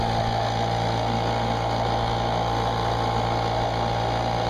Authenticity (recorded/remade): recorded